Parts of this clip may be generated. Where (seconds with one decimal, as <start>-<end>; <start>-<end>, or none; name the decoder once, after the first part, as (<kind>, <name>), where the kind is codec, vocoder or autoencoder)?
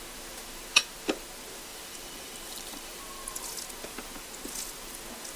1.7-3.0 (vocoder, BigVGAN v2)